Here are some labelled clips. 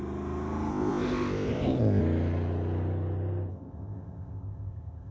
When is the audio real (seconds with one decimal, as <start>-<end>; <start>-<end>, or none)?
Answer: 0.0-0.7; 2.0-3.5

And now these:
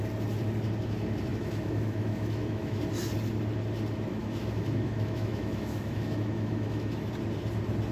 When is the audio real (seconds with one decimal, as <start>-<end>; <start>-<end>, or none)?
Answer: 0.0-1.3; 2.8-4.1; 7.1-7.9

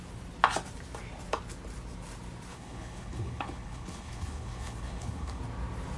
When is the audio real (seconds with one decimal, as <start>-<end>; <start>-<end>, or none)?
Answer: 0.0-2.5; 5.4-6.0

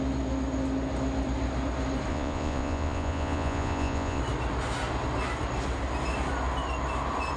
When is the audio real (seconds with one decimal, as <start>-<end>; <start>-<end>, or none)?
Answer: 0.0-2.1; 4.2-7.4

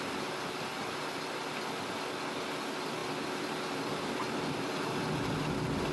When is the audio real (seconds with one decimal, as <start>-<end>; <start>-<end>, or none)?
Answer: 0.0-5.9

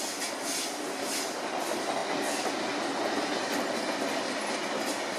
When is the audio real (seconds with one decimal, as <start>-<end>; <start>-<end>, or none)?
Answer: 0.0-5.2